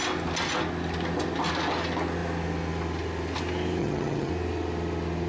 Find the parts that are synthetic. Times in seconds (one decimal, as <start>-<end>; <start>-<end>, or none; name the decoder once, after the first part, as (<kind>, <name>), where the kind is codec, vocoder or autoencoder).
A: 3.8-4.3 (vocoder, HiFi-GAN)